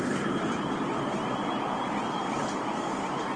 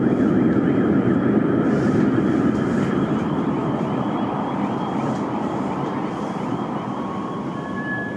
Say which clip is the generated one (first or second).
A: second